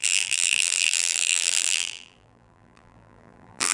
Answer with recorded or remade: remade